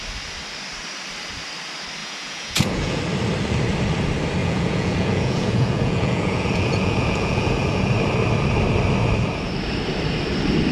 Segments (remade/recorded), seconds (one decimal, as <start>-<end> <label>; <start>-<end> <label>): 0.0-2.0 recorded; 2.0-3.0 remade; 3.0-4.4 recorded; 4.4-7.9 remade; 7.9-10.7 recorded